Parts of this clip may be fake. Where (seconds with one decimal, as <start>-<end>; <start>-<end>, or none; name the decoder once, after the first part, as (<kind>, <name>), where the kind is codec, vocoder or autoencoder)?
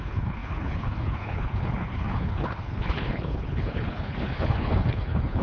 0.0-5.4 (codec, HILCodec)